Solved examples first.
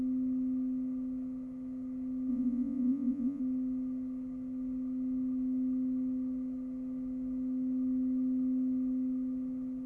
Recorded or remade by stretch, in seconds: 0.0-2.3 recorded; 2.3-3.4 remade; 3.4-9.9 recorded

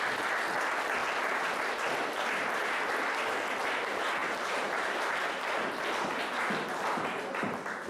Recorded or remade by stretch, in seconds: 0.0-1.0 recorded; 1.0-1.5 remade; 1.5-4.2 recorded; 4.2-5.1 remade; 5.1-7.9 recorded